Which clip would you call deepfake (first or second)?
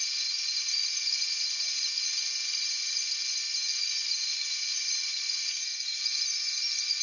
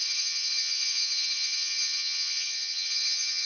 second